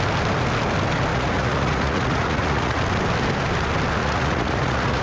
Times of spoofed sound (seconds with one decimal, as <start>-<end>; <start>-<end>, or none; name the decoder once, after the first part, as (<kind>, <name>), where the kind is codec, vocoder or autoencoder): 1.1-2.8 (vocoder, Vocos); 4.0-5.0